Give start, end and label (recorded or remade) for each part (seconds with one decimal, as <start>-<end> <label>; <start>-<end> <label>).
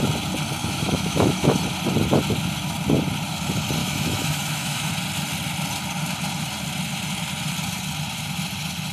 0.0-0.6 recorded; 0.6-1.6 remade; 1.6-3.8 recorded; 3.8-4.9 remade; 4.9-8.9 recorded